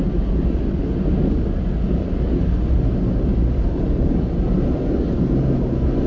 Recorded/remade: recorded